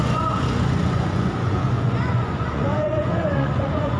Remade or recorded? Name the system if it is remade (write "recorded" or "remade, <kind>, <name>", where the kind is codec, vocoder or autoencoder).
remade, vocoder, Vocos